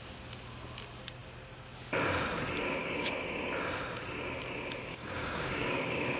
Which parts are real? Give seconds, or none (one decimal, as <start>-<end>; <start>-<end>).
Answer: 0.0-2.8; 3.5-4.9